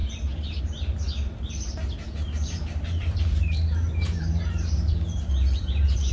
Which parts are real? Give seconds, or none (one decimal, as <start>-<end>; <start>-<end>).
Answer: 0.0-0.6